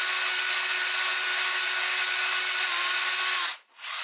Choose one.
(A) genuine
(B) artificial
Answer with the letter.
A